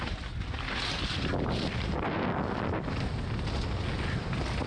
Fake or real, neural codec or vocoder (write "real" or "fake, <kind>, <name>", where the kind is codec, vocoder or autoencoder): real